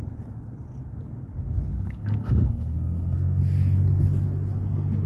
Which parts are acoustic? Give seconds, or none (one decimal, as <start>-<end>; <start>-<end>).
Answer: 0.0-1.7; 3.4-5.1